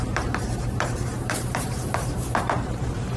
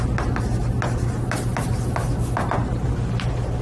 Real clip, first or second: second